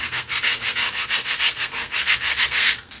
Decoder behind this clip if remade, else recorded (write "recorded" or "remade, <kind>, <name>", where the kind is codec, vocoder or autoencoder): remade, codec, SNAC